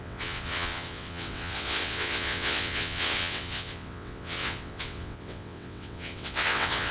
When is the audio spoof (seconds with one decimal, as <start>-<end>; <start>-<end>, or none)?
0.0-6.9